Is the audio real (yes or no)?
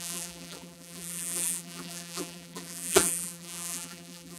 no